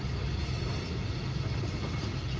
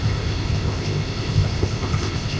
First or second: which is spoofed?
second